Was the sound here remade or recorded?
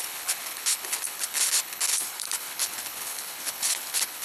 remade